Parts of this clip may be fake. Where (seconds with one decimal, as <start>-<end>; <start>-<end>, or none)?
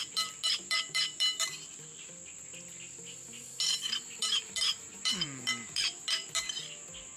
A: 0.0-2.1; 3.7-6.6